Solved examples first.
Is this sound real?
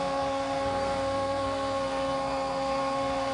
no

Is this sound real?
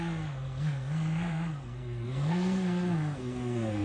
no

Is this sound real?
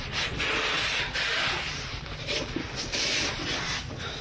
yes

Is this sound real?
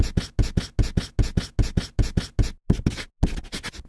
yes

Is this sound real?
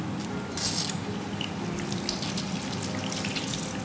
yes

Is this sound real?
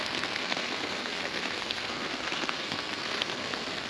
no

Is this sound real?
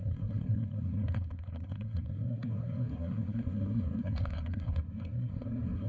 no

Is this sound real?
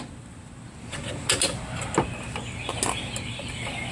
yes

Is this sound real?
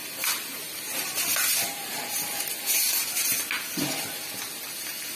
yes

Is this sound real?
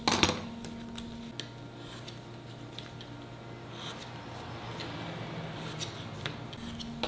yes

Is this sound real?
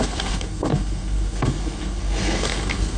no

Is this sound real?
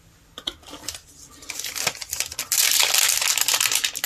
yes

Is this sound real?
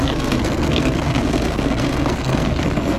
no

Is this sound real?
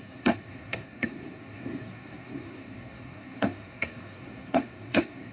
no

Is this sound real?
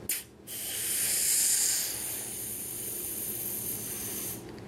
yes